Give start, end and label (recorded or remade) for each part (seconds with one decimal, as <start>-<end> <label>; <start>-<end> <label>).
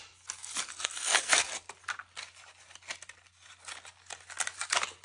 0.0-0.7 recorded; 0.7-1.4 remade; 1.4-5.0 recorded